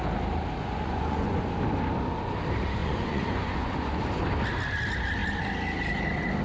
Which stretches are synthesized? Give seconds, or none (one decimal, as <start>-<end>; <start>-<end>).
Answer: 0.6-1.4; 2.8-4.1